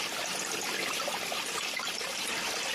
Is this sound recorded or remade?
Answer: recorded